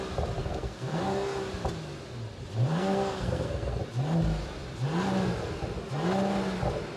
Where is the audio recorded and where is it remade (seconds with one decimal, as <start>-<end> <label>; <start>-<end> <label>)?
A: 0.0-0.4 recorded; 0.4-1.0 remade; 1.0-2.7 recorded; 2.7-3.8 remade; 3.8-7.0 recorded